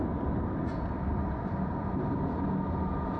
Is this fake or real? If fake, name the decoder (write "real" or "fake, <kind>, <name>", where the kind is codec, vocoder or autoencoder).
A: real